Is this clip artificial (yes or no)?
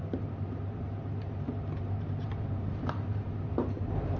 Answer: yes